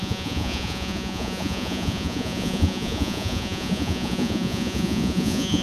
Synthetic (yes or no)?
yes